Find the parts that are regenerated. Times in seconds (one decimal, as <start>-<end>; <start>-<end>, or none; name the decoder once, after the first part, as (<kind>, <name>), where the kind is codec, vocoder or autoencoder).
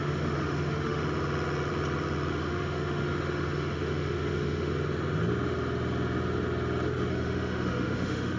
0.0-1.0 (autoencoder, DAC-VAE); 2.3-4.7; 7.1-8.4